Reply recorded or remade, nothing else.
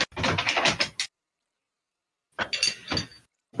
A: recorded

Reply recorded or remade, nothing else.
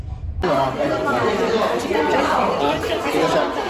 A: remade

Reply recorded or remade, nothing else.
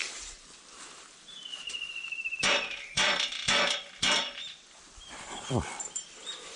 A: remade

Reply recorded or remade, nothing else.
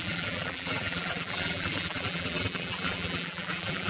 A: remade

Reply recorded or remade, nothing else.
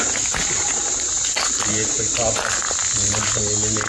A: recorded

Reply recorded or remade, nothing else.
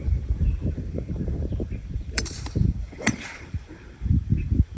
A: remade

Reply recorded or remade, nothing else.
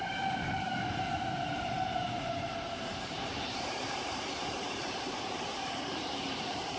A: remade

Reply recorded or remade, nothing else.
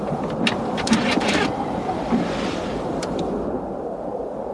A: remade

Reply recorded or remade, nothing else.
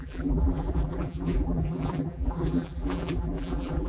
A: remade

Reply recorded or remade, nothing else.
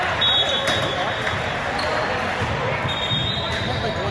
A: remade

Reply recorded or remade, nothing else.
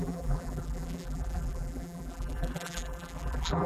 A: remade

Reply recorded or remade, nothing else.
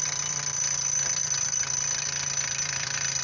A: remade